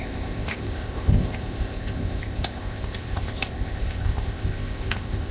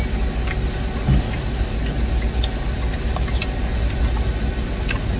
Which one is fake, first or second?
first